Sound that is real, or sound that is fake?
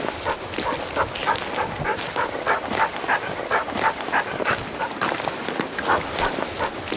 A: real